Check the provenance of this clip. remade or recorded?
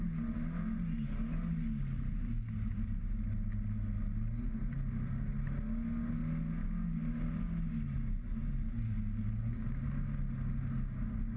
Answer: recorded